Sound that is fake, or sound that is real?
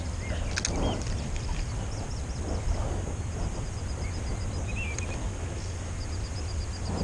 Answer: real